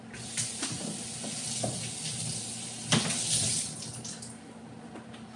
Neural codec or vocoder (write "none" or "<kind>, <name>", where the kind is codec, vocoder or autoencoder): none